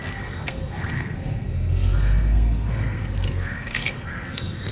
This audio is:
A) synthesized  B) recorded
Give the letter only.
A